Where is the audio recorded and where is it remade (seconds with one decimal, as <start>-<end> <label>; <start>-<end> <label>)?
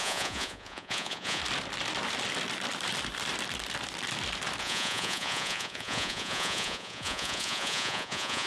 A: 0.0-1.4 remade; 1.4-4.6 recorded; 4.6-8.5 remade